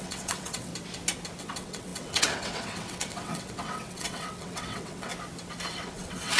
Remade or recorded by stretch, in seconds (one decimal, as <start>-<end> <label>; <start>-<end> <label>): 0.0-0.7 remade; 0.7-1.4 recorded; 1.4-5.1 remade; 5.1-5.7 recorded; 5.7-6.4 remade